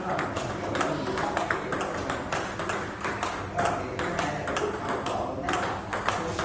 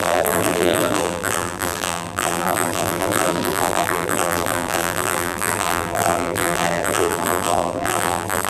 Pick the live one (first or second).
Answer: first